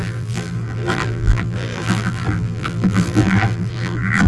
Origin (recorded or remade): remade